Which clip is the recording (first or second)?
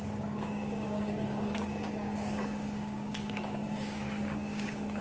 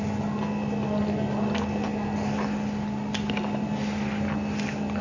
second